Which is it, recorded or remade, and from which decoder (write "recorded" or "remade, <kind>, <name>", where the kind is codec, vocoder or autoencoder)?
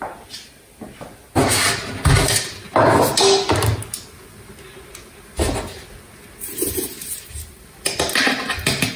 recorded